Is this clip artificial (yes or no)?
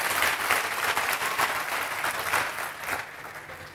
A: no